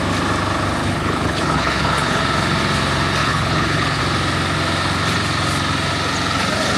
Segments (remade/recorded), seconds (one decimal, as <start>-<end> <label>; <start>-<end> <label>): 0.0-0.8 recorded; 0.8-2.2 remade; 2.2-3.2 recorded; 3.2-4.0 remade; 4.0-6.8 recorded